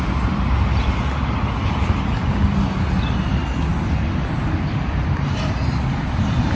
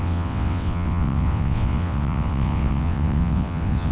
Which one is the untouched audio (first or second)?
first